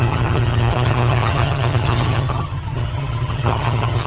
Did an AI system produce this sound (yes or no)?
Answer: yes